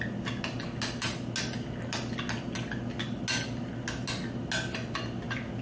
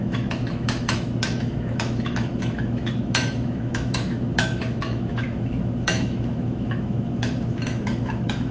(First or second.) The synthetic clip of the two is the second